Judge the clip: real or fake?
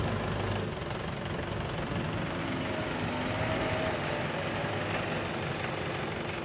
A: real